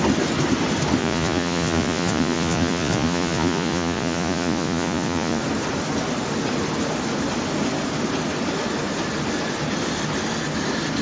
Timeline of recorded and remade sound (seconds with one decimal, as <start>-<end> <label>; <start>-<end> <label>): 0.0-1.0 recorded; 1.0-5.4 remade; 5.4-11.0 recorded